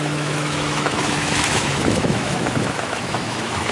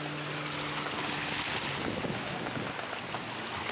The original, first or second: second